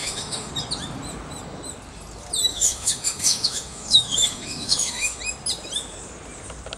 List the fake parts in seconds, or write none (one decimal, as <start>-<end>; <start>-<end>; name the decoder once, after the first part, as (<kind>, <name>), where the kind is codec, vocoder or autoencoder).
0.0-0.5 (autoencoder, DAC-VAE); 2.5-5.2